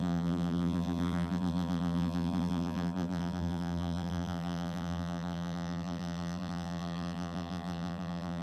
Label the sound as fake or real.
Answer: fake